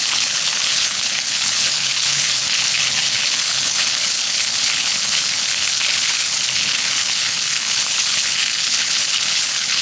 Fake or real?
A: fake